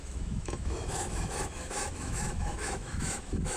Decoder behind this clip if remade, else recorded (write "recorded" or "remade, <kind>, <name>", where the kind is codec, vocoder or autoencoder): remade, autoencoder, DAC-VAE